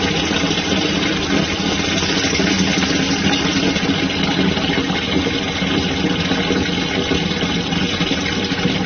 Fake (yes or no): no